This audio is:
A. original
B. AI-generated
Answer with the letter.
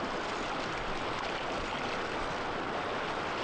A